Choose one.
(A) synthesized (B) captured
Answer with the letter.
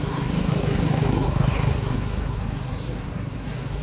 A